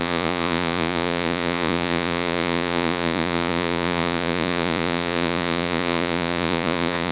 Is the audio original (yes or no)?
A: no